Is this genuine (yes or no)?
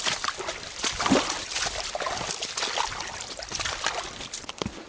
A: yes